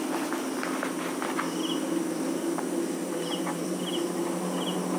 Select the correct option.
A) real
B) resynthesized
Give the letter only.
A